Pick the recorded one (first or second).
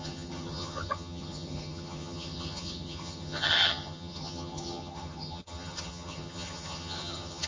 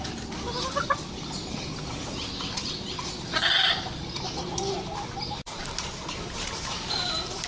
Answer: second